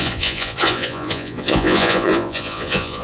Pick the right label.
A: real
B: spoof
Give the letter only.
B